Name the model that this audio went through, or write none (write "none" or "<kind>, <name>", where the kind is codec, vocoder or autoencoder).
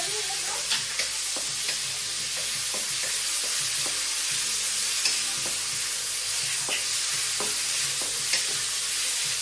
none